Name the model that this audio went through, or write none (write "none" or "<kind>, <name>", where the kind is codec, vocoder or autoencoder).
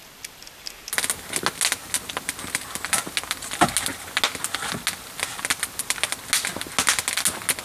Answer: none